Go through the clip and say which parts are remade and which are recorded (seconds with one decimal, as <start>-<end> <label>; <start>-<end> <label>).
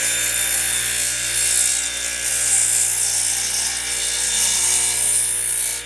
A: 0.0-5.9 recorded